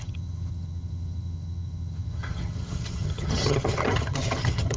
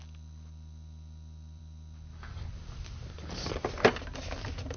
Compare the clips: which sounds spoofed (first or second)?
first